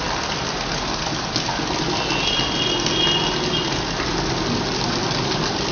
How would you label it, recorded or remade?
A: recorded